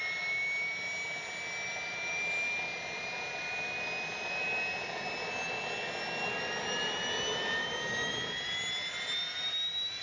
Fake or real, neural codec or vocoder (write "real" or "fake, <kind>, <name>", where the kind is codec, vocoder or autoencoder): real